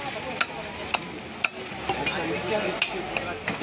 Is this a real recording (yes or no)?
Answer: yes